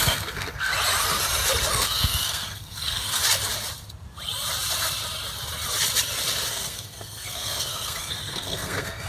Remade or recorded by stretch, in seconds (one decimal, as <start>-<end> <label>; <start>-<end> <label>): 0.0-0.7 remade; 0.7-1.7 recorded; 1.7-3.2 remade; 3.2-6.5 recorded; 6.5-9.1 remade